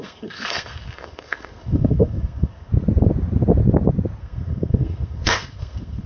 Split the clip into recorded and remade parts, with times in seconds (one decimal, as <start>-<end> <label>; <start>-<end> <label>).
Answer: 0.0-2.7 remade; 2.7-4.2 recorded; 4.2-6.1 remade

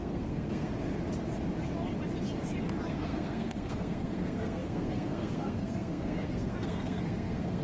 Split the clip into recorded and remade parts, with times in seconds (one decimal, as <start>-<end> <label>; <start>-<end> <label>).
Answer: 0.0-0.7 remade; 0.7-2.9 recorded; 2.9-7.6 remade

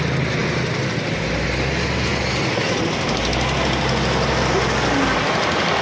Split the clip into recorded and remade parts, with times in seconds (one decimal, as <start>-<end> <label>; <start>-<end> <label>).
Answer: 0.0-5.8 recorded

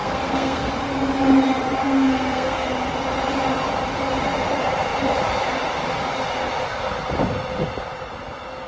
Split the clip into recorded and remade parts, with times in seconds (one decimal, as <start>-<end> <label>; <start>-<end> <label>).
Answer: 0.0-0.7 remade; 0.7-1.8 recorded; 1.8-2.7 remade; 2.7-8.7 recorded

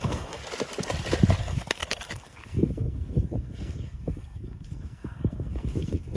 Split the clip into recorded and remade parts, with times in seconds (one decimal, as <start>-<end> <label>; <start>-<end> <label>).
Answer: 0.0-0.4 remade; 0.4-1.4 recorded; 1.4-6.2 remade

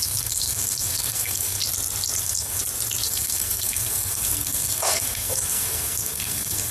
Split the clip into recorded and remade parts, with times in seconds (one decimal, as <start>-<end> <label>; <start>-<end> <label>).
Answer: 0.0-1.6 remade; 1.6-2.2 recorded; 2.2-2.6 remade; 2.6-3.1 recorded; 3.1-6.7 remade

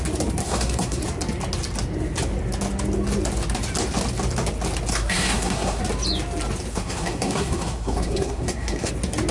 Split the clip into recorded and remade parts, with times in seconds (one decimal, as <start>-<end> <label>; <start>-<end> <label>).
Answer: 0.0-0.4 recorded; 0.4-1.0 remade; 1.0-4.9 recorded; 4.9-5.8 remade; 5.8-6.7 recorded; 6.7-8.9 remade; 8.9-9.3 recorded